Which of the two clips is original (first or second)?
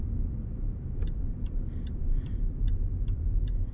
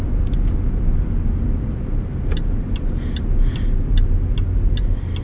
second